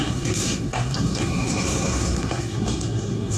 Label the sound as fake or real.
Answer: fake